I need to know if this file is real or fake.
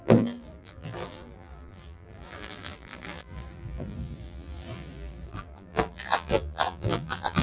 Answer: fake